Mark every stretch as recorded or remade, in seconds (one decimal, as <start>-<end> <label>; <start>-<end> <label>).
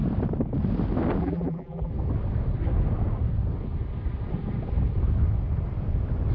0.0-1.2 recorded; 1.2-1.9 remade; 1.9-6.3 recorded